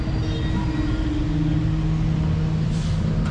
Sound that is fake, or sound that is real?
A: real